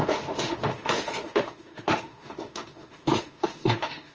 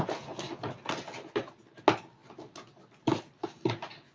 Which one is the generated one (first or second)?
first